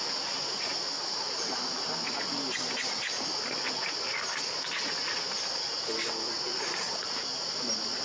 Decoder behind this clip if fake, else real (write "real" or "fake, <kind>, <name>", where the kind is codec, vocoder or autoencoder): real